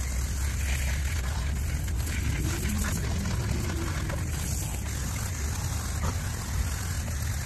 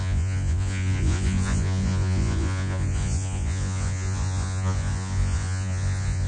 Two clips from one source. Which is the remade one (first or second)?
second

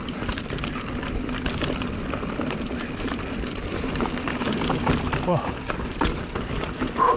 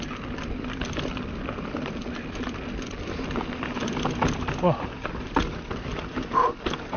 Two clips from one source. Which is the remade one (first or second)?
first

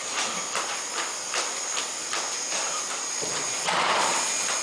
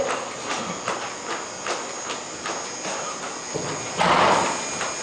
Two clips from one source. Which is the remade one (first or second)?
first